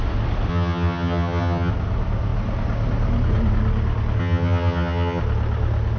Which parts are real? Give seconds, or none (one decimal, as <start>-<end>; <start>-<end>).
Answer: 0.0-0.5; 1.7-4.2; 5.2-6.0